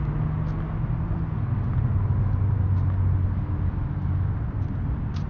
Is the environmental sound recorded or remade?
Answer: recorded